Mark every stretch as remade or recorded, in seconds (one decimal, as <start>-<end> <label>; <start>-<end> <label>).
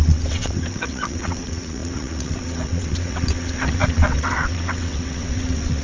0.0-5.8 remade